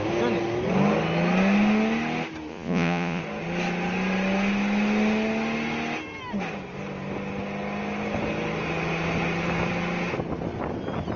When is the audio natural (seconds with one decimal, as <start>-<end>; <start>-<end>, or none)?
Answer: 0.0-2.5; 3.2-11.2